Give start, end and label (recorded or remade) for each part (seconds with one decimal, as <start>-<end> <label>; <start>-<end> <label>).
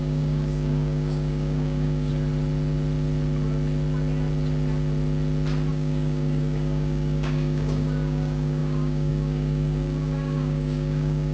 0.0-2.1 remade; 2.1-5.7 recorded; 5.7-11.3 remade